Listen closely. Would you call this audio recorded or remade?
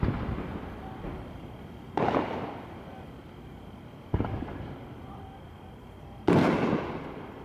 recorded